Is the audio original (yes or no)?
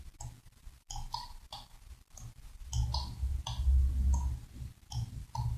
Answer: yes